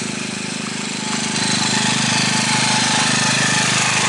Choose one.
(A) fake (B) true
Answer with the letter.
A